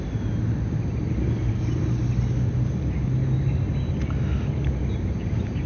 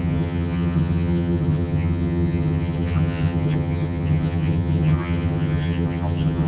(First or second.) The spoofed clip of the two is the second